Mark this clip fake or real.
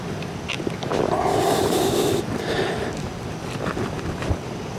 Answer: real